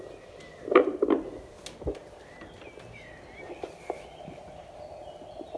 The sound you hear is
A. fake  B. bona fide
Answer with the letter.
B